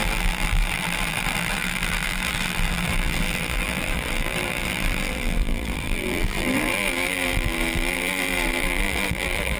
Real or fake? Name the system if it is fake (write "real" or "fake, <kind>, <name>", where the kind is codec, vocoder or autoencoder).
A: fake, vocoder, BigVGAN v2